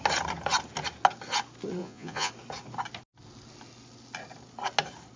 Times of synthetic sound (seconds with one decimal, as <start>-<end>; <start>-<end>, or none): 1.8-2.3